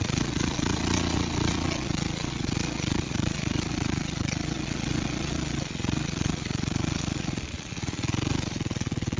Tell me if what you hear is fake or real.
fake